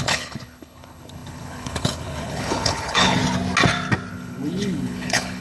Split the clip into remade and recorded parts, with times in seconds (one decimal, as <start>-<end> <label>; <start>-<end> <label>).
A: 0.0-3.2 remade; 3.2-4.1 recorded; 4.1-5.4 remade